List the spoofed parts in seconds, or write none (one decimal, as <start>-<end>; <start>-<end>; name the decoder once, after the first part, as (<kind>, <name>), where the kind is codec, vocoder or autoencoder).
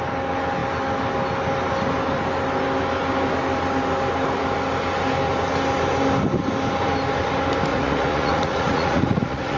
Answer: 7.7-9.6 (vocoder, Vocos)